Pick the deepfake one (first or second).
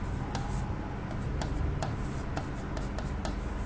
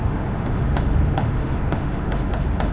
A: second